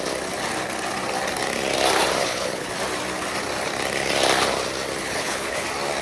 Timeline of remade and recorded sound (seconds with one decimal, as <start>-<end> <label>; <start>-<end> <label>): 0.0-2.2 recorded; 2.2-2.7 remade; 2.7-5.0 recorded; 5.0-5.6 remade; 5.6-6.0 recorded